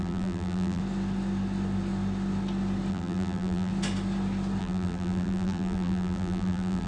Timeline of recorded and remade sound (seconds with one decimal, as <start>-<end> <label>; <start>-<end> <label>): 0.0-0.8 remade; 0.8-2.9 recorded; 2.9-3.7 remade; 3.7-4.6 recorded; 4.6-6.9 remade